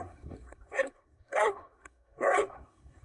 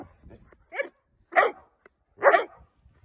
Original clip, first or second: second